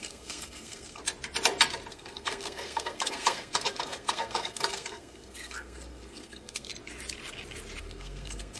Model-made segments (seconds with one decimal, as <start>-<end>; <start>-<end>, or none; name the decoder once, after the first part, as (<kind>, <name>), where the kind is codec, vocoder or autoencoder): 0.0-1.0 (codec, SNAC); 1.9-6.7; 7.8-8.6